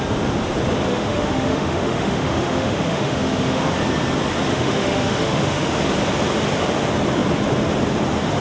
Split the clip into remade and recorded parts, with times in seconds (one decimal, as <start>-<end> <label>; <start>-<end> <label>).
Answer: 0.0-0.9 recorded; 0.9-3.7 remade; 3.7-4.5 recorded; 4.5-5.8 remade; 5.8-8.4 recorded